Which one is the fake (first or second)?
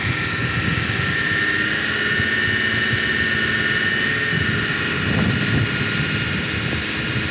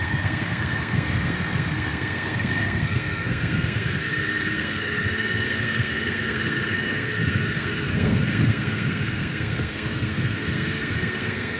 second